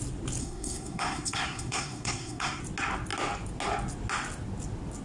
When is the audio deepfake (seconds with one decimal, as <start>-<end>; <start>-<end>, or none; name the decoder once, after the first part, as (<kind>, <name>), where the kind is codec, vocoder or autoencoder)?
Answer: 0.4-2.6 (codec, SNAC)